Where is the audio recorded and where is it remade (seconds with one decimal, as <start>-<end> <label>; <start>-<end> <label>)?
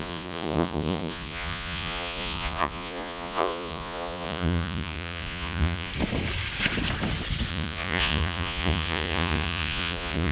0.0-5.9 remade; 5.9-7.5 recorded; 7.5-10.3 remade